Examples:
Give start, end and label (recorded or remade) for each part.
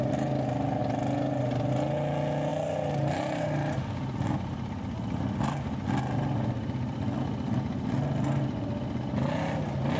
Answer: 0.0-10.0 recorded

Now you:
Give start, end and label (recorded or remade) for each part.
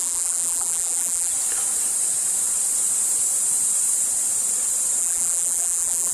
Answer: 0.0-1.3 remade; 1.3-5.0 recorded; 5.0-6.1 remade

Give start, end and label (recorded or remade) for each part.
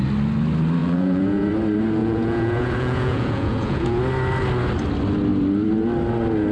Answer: 0.0-0.8 recorded; 0.8-1.5 remade; 1.5-2.0 recorded; 2.0-4.0 remade; 4.0-6.5 recorded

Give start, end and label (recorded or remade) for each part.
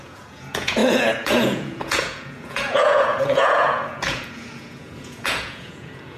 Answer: 0.0-6.2 remade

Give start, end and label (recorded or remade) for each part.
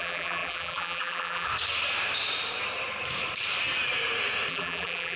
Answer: 0.0-1.5 remade; 1.5-4.5 recorded; 4.5-5.2 remade